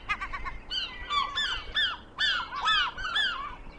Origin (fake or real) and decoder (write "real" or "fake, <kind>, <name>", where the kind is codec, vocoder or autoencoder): real